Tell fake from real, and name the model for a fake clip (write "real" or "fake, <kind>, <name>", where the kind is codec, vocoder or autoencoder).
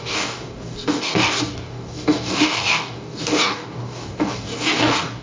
fake, codec, DAC